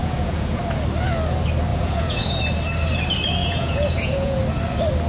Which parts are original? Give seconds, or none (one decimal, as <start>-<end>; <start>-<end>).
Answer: 0.6-1.7; 2.4-3.4; 4.4-5.1